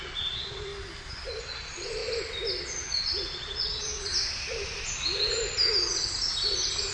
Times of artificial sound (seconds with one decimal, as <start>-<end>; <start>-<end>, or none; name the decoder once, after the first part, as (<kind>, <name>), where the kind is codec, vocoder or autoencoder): 0.0-0.7 (vocoder, Vocos); 1.4-2.0; 2.6-4.1